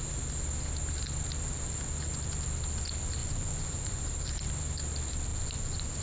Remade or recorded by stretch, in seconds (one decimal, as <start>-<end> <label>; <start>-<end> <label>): 0.0-3.2 recorded; 3.2-4.0 remade; 4.0-5.3 recorded; 5.3-6.0 remade